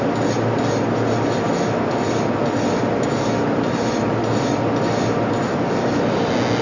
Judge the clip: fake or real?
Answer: real